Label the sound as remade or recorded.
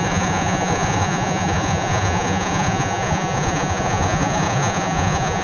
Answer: remade